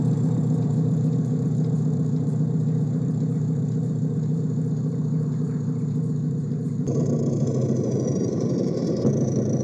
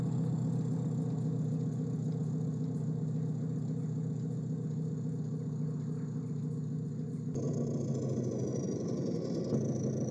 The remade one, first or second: first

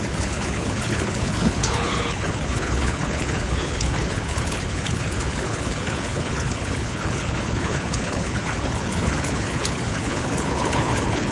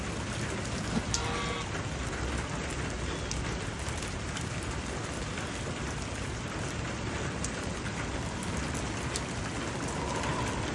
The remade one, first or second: first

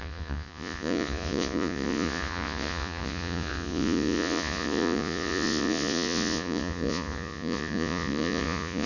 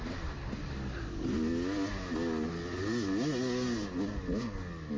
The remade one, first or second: first